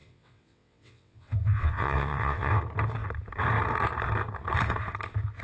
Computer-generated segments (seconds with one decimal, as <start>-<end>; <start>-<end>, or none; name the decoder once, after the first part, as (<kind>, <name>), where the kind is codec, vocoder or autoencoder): 0.0-2.6 (vocoder, WaveNeXt)